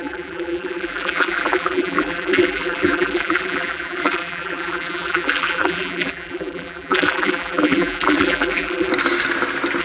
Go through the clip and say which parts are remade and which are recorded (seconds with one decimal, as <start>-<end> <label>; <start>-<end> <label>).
0.0-8.9 remade; 8.9-9.8 recorded